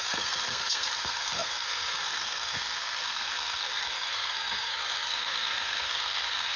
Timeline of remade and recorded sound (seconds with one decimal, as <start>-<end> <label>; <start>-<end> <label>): 0.0-6.6 remade